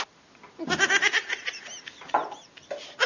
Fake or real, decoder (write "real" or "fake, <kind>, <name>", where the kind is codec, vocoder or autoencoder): real